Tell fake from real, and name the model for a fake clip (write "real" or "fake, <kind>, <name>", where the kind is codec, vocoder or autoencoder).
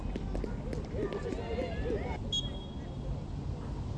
real